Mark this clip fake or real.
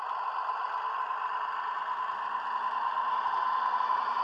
real